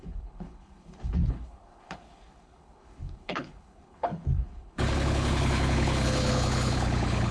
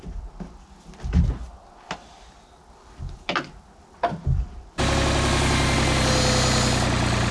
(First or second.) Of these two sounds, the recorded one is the second